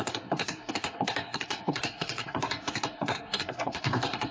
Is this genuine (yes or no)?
no